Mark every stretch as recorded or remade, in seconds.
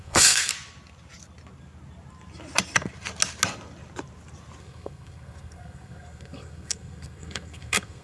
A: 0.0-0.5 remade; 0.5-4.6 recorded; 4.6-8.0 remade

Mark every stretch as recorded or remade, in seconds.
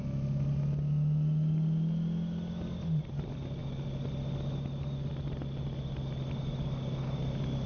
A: 0.0-7.7 recorded